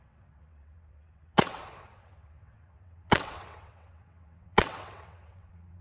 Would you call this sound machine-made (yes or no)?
yes